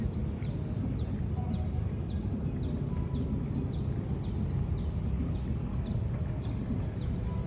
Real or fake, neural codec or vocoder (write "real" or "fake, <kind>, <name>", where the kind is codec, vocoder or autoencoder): real